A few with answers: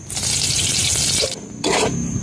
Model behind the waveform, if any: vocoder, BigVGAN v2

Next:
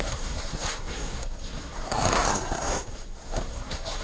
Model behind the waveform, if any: codec, SNAC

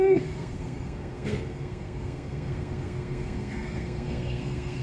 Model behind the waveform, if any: codec, SNAC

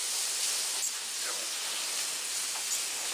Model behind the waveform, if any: none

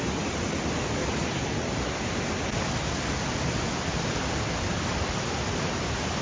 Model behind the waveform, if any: none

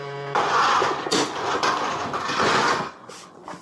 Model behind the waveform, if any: vocoder, Vocos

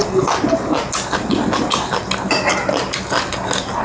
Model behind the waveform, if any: none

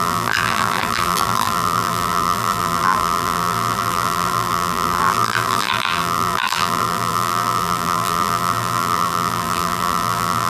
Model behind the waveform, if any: vocoder, BigVGAN v2